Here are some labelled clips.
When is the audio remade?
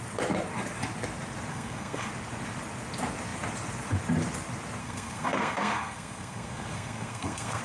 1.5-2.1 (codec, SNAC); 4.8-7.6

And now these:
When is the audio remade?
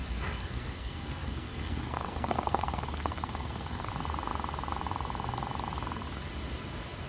0.0-3.9 (codec, SNAC)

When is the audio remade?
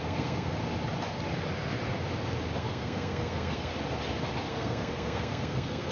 0.0-0.6 (codec, SNAC); 2.6-3.7; 4.5-5.9